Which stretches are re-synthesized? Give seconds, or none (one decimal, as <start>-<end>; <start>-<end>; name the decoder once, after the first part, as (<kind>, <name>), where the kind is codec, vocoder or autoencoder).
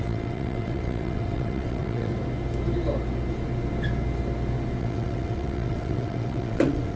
0.0-2.1 (vocoder, WaveNeXt); 4.8-7.0